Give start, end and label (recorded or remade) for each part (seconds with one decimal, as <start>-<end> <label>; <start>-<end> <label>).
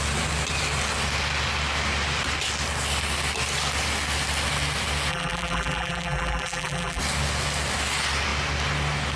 0.0-5.1 recorded; 5.1-7.0 remade; 7.0-9.2 recorded